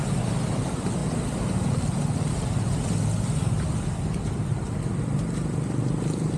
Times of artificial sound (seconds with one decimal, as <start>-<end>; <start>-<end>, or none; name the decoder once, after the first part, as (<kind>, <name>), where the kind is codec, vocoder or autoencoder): none